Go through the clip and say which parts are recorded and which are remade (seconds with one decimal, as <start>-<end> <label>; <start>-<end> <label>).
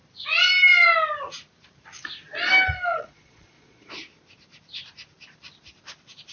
0.0-2.9 recorded; 2.9-3.9 remade; 3.9-6.3 recorded